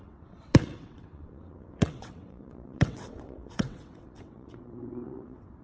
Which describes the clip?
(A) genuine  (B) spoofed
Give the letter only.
B